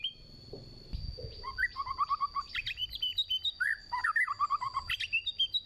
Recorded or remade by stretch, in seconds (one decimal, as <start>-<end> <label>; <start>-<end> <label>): 0.0-5.7 recorded